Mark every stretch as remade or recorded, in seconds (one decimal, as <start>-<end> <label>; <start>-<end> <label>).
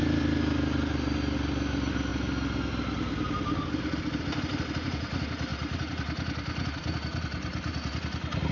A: 0.0-8.5 recorded